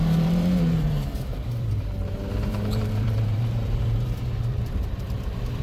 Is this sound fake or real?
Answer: fake